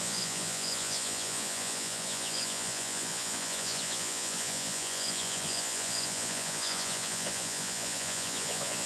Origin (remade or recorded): remade